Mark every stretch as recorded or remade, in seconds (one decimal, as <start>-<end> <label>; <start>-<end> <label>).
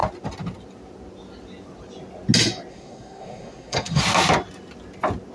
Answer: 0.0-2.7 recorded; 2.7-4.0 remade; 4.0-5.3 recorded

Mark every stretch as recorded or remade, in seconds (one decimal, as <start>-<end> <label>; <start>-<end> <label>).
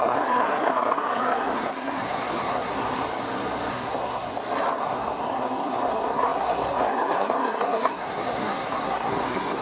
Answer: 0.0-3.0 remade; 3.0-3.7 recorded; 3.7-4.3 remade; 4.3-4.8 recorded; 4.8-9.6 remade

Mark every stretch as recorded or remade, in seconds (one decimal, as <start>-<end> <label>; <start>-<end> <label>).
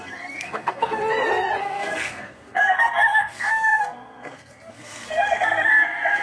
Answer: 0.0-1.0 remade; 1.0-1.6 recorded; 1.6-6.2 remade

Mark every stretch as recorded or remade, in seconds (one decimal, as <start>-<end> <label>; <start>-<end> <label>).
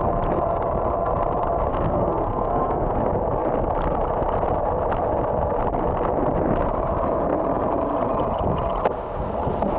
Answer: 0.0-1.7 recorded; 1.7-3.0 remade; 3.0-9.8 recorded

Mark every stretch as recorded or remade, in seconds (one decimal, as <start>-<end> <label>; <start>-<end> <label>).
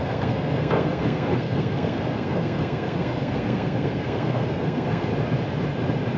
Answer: 0.0-5.1 remade; 5.1-6.2 recorded